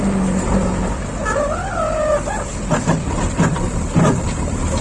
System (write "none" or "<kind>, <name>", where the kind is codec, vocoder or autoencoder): none